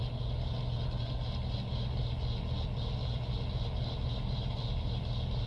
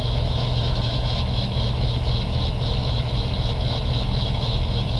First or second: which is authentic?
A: first